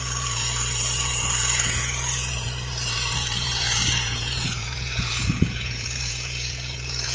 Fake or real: fake